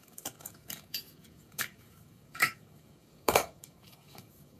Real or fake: fake